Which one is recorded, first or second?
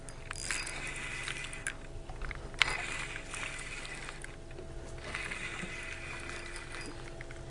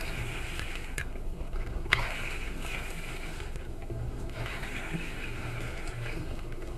first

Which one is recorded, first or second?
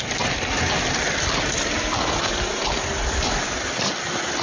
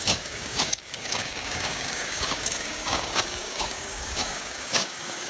first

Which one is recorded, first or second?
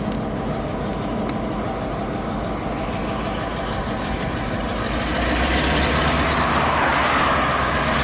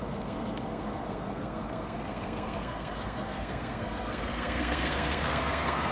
first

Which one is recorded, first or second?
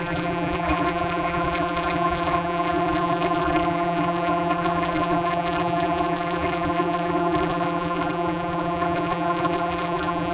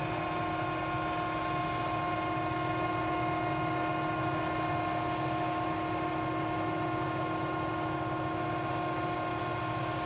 second